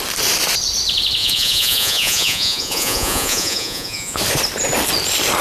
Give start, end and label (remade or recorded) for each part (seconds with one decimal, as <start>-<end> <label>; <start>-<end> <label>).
0.0-1.2 recorded; 1.2-4.2 remade; 4.2-5.4 recorded